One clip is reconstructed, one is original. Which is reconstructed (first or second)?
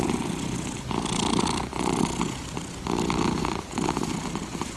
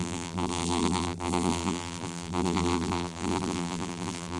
second